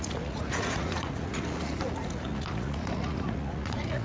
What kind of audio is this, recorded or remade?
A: remade